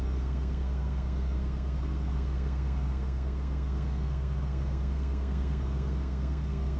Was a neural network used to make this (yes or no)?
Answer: yes